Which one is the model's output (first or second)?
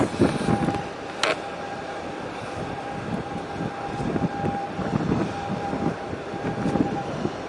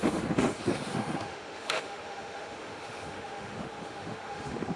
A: second